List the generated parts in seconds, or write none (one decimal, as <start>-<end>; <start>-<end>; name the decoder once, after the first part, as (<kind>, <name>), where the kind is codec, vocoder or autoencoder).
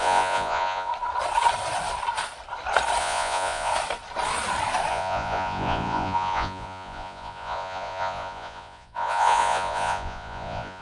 0.0-0.9 (vocoder, Vocos); 3.0-3.7; 4.9-10.8